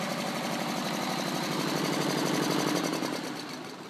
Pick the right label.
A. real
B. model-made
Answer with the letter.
A